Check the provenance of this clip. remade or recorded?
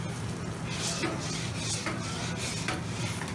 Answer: recorded